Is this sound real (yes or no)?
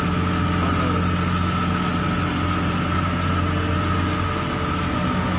yes